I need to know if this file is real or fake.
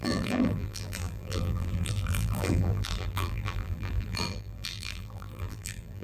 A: fake